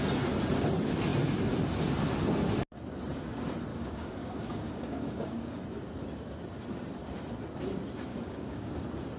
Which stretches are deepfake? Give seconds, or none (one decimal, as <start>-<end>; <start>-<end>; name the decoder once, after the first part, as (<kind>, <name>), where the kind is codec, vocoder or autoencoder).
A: 3.7-5.6 (codec, DAC); 8.1-8.7